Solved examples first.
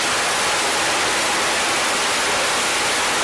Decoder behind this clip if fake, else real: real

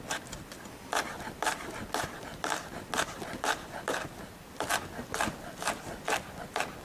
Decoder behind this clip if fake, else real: real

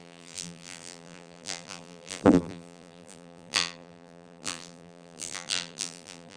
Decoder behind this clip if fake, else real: fake, vocoder, BigVGAN v2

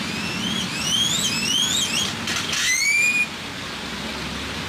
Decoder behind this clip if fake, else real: real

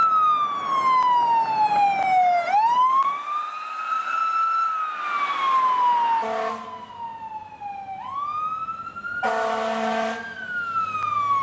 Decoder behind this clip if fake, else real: real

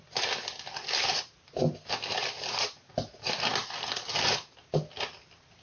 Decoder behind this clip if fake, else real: real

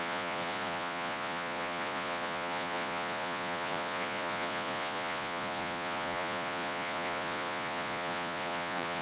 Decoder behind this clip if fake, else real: fake, vocoder, Vocos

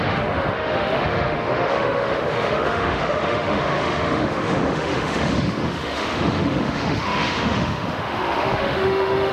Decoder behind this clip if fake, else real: fake, autoencoder, DAC-VAE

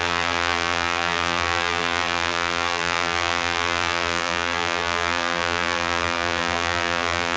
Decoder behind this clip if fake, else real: fake, vocoder, BigVGAN v2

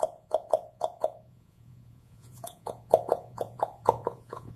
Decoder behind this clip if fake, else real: fake, vocoder, Vocos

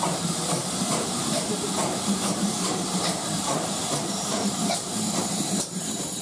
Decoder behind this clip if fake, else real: fake, vocoder, BigVGAN v2